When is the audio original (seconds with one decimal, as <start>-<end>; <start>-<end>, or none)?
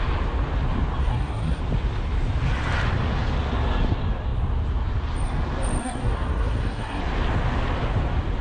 0.0-1.0; 1.6-5.8; 7.0-8.4